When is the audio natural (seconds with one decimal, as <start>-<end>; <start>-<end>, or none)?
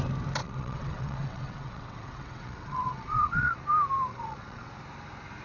0.0-0.4; 3.6-4.1; 4.7-5.4